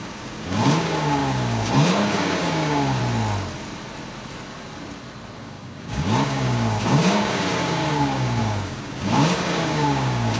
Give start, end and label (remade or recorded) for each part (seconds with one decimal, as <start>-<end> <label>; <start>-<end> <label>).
0.0-3.0 remade; 3.0-5.4 recorded; 5.4-10.4 remade

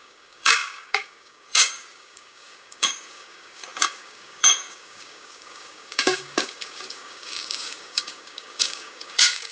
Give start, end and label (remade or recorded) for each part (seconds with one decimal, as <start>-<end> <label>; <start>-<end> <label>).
0.0-9.5 remade

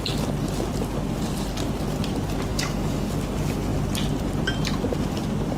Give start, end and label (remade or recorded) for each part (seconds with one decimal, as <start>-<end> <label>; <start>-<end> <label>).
0.0-2.5 recorded; 2.5-3.1 remade; 3.1-5.6 recorded

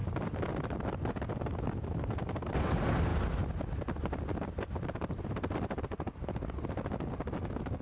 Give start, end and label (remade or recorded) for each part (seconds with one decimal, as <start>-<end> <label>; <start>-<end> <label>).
0.0-7.8 recorded

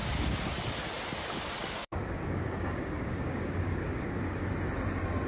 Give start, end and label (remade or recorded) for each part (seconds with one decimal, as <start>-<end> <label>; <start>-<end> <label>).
0.0-0.5 remade; 0.5-1.6 recorded; 1.6-4.5 remade; 4.5-5.3 recorded

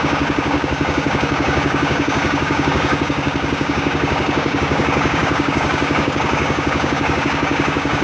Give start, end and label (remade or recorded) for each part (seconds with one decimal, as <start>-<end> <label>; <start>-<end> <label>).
0.0-8.0 remade